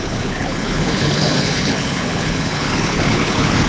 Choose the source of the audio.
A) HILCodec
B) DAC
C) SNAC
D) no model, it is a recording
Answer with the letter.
A